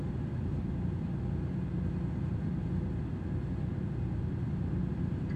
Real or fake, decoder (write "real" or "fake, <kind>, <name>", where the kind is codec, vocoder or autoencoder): fake, vocoder, BigVGAN v2